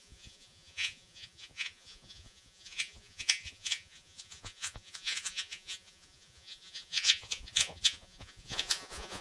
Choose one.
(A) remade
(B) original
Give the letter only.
A